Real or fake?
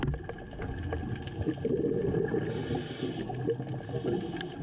real